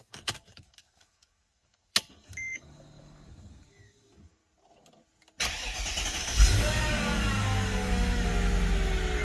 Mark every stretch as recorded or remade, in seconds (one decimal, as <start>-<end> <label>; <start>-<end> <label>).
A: 0.0-4.4 remade; 4.4-6.2 recorded; 6.2-8.3 remade; 8.3-9.2 recorded